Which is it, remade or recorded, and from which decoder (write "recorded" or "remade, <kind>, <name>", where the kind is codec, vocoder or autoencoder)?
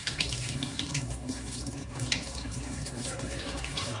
remade, codec, SNAC